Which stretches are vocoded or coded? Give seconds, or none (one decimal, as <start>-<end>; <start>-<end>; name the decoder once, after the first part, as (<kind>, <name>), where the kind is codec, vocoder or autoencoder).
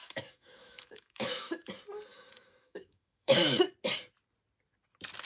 0.0-1.7 (autoencoder, DAC-VAE); 2.1-3.7